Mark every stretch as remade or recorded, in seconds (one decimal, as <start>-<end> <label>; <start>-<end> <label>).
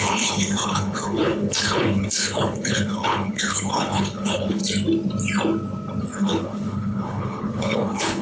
0.0-4.6 remade; 4.6-6.0 recorded; 6.0-8.2 remade